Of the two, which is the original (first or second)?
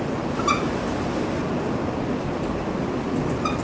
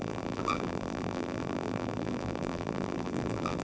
first